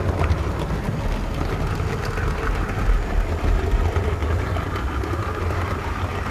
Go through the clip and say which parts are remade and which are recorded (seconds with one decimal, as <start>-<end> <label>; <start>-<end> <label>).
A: 0.0-6.3 recorded